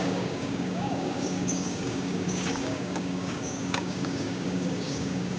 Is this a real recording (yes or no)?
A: no